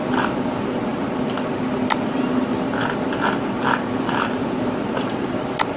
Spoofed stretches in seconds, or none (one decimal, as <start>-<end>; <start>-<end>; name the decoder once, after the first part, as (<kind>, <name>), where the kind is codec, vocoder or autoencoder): none